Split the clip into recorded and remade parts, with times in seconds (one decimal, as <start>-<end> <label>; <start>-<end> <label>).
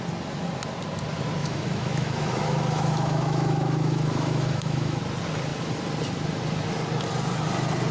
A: 0.0-1.4 recorded; 1.4-5.0 remade; 5.0-7.9 recorded